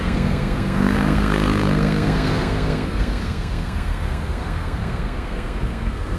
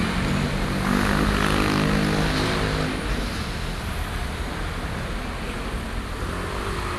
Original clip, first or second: second